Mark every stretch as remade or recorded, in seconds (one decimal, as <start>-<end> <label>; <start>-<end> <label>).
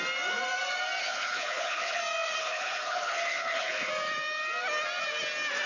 0.0-1.0 recorded; 1.0-2.0 remade; 2.0-2.4 recorded; 2.4-3.9 remade; 3.9-5.7 recorded